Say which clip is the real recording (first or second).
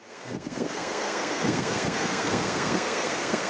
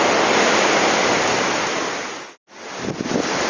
second